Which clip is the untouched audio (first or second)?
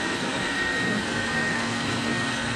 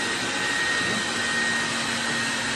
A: second